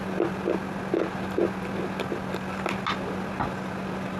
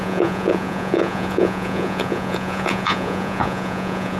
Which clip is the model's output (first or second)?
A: second